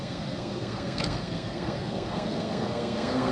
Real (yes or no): no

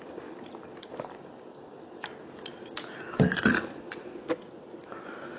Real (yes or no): yes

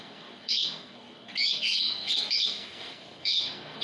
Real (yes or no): no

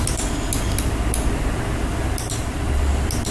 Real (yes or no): yes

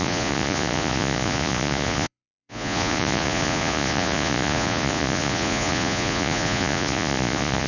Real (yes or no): no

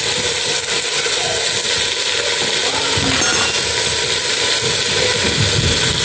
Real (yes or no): yes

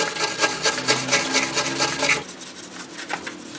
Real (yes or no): yes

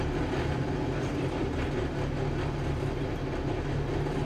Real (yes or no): yes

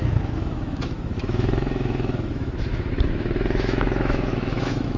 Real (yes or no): no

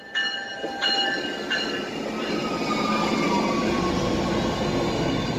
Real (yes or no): yes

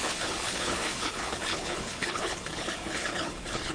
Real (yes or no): no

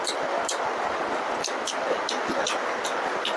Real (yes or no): yes